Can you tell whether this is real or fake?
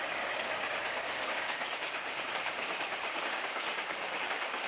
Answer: fake